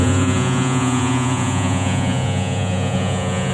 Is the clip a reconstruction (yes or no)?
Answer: yes